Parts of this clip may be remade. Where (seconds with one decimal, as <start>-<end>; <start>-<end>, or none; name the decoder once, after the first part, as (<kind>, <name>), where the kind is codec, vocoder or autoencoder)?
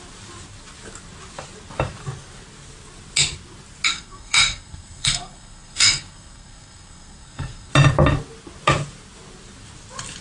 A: 3.9-7.7 (codec, SNAC)